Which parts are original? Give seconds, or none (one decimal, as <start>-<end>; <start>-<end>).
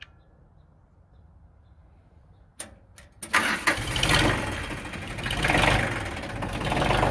0.0-7.1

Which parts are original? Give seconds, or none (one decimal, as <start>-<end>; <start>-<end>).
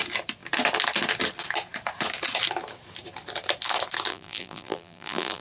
0.0-4.1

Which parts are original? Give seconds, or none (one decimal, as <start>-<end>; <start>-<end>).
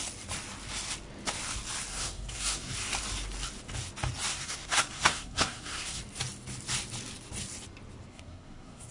0.0-1.9; 2.7-4.3; 6.0-8.1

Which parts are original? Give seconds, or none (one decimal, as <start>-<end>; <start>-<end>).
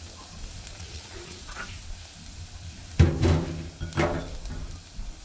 0.0-0.7; 1.6-5.2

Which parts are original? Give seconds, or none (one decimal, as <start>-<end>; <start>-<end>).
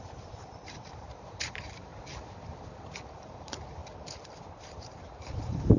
1.9-3.1; 3.8-4.5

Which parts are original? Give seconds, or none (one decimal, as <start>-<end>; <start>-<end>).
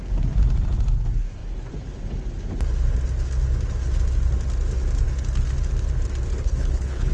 0.0-6.3